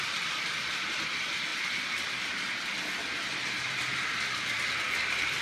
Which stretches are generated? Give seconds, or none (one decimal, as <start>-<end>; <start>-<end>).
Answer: none